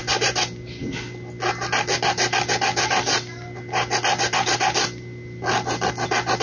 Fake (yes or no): no